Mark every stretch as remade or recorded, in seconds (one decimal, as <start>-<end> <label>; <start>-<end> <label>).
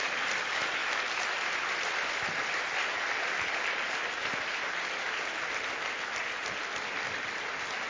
0.0-7.9 recorded